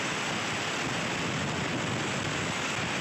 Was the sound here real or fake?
real